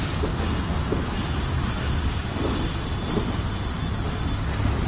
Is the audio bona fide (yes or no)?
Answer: yes